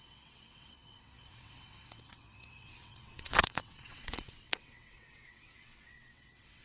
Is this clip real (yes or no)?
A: no